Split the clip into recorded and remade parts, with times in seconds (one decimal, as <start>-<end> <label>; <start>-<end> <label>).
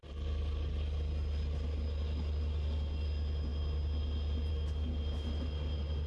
0.0-6.1 recorded